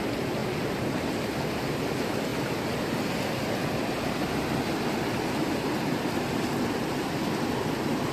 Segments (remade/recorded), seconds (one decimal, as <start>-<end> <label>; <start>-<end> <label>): 0.0-2.3 remade; 2.3-6.6 recorded; 6.6-8.1 remade